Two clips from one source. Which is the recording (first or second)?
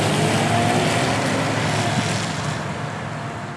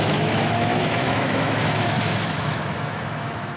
first